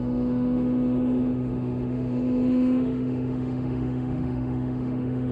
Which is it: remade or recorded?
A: remade